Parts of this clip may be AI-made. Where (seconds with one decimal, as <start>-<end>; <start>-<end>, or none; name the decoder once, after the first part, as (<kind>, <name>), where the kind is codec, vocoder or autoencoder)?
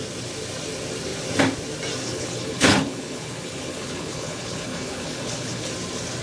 2.0-5.7 (codec, HILCodec)